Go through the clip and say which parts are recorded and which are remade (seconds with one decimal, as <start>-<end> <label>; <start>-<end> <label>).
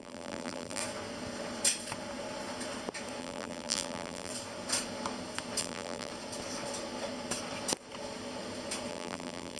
0.0-0.8 remade; 0.8-3.2 recorded; 3.2-4.3 remade; 4.3-5.6 recorded; 5.6-6.1 remade; 6.1-8.9 recorded; 8.9-9.6 remade